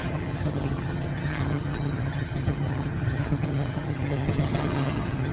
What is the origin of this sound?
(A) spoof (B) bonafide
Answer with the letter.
A